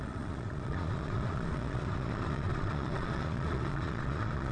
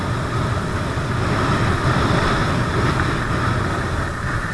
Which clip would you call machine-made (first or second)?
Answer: first